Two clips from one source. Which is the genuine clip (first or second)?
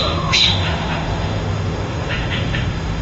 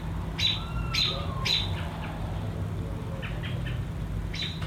second